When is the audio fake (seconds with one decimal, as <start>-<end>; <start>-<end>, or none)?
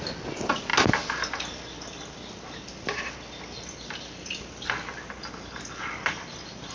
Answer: none